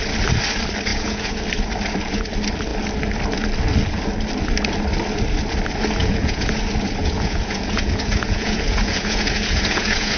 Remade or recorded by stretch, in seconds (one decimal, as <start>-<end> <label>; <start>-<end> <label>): 0.0-0.9 recorded; 0.9-1.4 remade; 1.4-6.0 recorded; 6.0-6.6 remade; 6.6-7.0 recorded; 7.0-10.2 remade